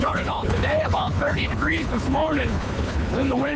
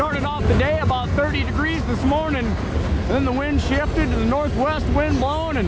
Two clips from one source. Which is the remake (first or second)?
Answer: first